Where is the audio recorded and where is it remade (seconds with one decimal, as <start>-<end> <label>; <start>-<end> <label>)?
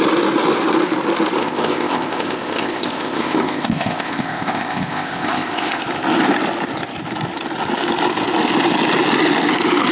0.0-1.4 recorded; 1.4-5.8 remade; 5.8-9.9 recorded